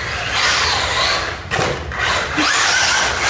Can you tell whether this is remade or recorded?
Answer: recorded